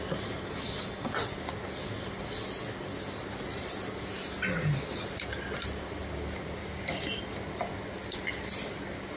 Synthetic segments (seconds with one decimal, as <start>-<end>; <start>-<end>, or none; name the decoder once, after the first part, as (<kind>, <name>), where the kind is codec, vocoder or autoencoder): 6.6-7.2 (codec, DAC)

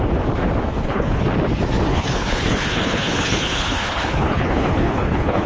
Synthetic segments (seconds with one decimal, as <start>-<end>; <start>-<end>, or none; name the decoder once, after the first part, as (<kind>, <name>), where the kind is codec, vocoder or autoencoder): 0.7-1.2 (codec, HILCodec); 1.9-5.5

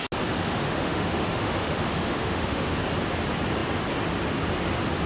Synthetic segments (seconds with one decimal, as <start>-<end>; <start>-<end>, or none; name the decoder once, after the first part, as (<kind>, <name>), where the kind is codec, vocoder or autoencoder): 0.4-2.7 (autoencoder, DAC-VAE)

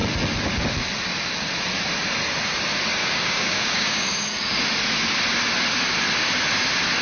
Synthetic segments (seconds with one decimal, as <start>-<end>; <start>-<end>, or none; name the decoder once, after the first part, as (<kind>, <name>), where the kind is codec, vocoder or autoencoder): 3.0-4.6 (codec, DAC)

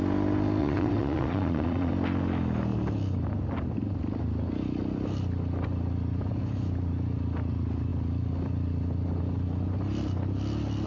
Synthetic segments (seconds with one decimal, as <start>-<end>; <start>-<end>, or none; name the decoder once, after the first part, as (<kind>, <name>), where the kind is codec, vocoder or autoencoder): 0.6-1.9 (vocoder, Vocos)

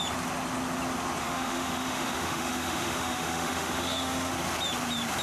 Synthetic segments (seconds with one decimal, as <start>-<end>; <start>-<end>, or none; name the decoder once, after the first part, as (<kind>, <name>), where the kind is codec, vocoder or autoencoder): 1.2-4.3 (autoencoder, DAC-VAE)